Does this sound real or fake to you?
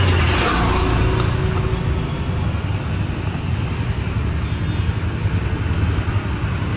real